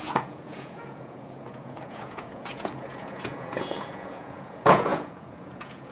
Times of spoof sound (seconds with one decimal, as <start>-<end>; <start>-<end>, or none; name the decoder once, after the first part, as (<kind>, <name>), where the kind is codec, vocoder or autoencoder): 0.0-5.9 (vocoder, Vocos)